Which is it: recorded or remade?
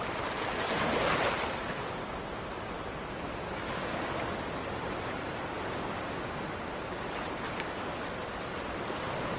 recorded